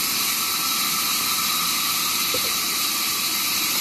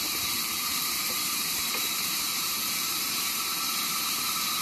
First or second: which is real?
first